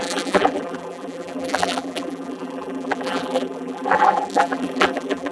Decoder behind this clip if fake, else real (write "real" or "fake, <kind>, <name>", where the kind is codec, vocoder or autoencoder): fake, vocoder, BigVGAN v2